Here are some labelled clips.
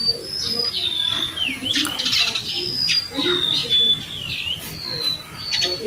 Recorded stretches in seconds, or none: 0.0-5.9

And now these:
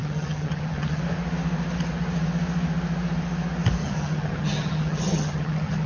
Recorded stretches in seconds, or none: 1.0-3.8

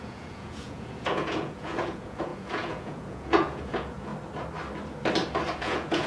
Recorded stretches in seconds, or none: 4.1-5.6

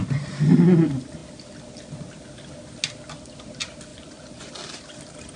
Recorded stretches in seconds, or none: 0.0-3.9; 4.5-5.4

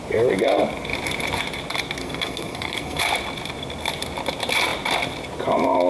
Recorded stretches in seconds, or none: 0.0-2.0; 3.0-5.9

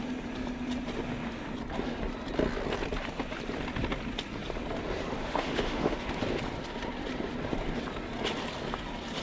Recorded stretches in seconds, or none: 0.0-5.2; 6.2-9.2